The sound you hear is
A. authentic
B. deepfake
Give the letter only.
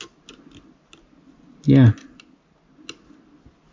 A